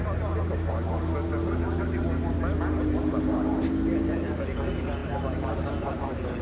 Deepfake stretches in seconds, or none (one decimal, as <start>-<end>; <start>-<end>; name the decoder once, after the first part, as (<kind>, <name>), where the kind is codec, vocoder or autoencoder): none

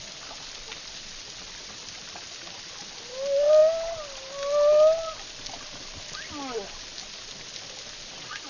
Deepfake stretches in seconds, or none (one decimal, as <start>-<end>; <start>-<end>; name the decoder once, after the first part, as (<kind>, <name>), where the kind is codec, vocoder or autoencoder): none

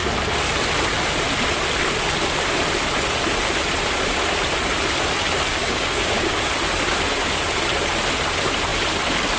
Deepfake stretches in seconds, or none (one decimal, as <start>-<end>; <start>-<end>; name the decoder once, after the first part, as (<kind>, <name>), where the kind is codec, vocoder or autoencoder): 5.5-6.5 (codec, DAC)